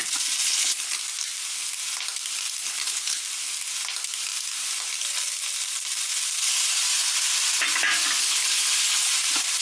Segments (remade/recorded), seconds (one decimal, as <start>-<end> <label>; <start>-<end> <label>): 0.0-0.4 recorded; 0.4-1.0 remade; 1.0-2.6 recorded; 2.6-3.2 remade; 3.2-8.2 recorded; 8.2-9.1 remade; 9.1-9.6 recorded